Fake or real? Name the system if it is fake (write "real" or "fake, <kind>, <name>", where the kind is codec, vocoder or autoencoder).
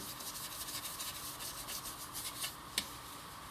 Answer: real